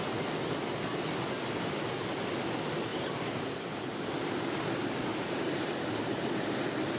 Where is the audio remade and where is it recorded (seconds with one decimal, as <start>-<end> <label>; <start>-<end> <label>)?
0.0-2.9 recorded; 2.9-3.9 remade; 3.9-5.1 recorded; 5.1-6.5 remade; 6.5-7.0 recorded